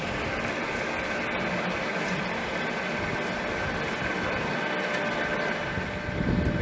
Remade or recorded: recorded